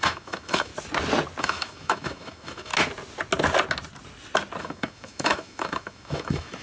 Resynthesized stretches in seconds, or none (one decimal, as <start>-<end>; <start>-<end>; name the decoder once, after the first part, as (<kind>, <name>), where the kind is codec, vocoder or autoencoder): 0.0-0.7 (autoencoder, DAC-VAE); 1.4-2.7; 4.6-6.6